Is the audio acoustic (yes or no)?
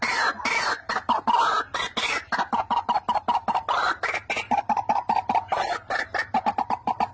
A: yes